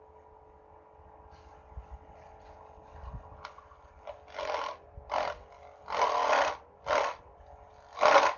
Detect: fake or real real